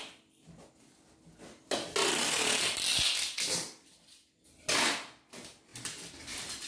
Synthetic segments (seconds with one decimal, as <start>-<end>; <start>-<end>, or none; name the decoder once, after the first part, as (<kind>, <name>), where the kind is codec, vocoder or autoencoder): none